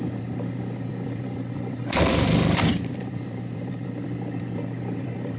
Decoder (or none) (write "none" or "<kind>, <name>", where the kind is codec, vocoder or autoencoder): vocoder, BigVGAN v2